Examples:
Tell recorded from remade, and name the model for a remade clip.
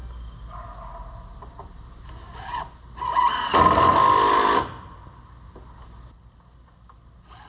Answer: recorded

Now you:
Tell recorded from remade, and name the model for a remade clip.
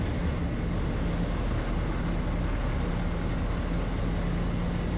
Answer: recorded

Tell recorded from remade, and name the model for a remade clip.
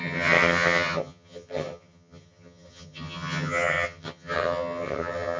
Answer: remade, vocoder, HiFi-GAN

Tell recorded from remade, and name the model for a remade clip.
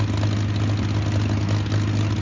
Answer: recorded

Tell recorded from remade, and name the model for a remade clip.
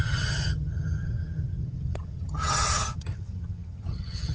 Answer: remade, vocoder, HiFi-GAN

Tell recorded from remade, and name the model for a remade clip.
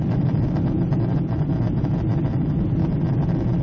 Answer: recorded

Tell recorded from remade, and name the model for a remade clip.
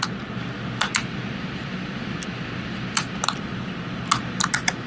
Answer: recorded